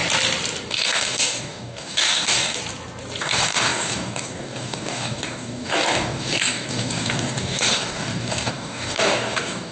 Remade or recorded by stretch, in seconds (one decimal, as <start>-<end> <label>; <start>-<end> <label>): 0.0-0.7 recorded; 0.7-2.6 remade; 2.6-3.2 recorded; 3.2-9.7 remade